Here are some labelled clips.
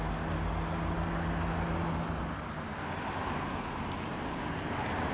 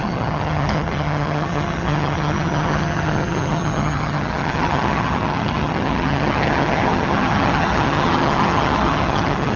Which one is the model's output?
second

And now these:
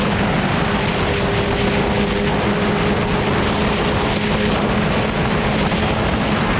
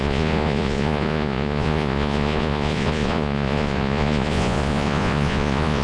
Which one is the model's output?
second